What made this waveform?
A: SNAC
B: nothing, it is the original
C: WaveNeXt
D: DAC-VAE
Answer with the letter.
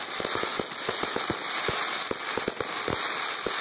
B